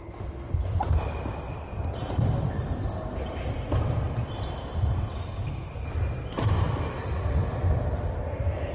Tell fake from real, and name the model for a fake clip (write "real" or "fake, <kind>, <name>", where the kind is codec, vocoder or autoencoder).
real